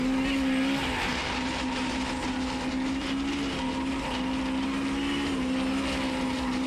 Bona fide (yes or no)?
yes